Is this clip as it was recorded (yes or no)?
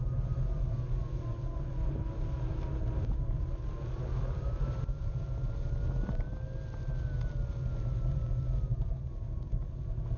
yes